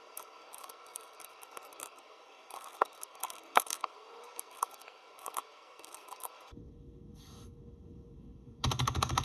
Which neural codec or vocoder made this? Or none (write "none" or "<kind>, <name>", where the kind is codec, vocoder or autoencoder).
codec, SNAC